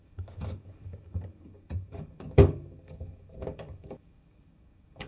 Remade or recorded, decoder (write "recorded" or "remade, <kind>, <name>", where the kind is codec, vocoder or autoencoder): remade, codec, DAC